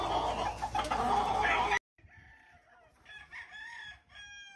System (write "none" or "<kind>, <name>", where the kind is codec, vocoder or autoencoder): none